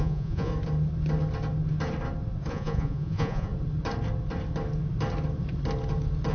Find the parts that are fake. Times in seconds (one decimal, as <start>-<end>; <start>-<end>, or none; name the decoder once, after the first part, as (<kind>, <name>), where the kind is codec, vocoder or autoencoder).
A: 0.0-0.5 (vocoder, Vocos); 2.5-3.5